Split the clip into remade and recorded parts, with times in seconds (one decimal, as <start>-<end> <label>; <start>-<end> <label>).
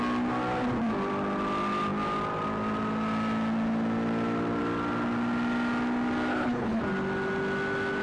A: 0.0-6.3 recorded; 6.3-6.8 remade; 6.8-8.0 recorded